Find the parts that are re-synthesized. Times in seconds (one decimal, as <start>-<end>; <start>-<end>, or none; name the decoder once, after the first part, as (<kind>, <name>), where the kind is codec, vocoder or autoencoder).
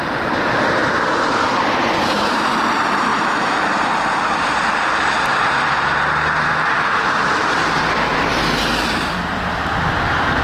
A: 3.1-6.8 (vocoder, BigVGAN v2); 7.6-8.6